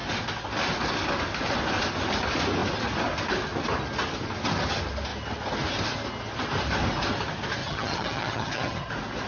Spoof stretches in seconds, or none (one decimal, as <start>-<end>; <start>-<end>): 7.6-8.9